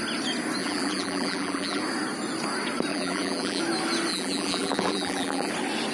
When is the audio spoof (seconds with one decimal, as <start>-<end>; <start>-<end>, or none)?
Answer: 0.6-1.8; 2.9-3.6; 4.1-5.5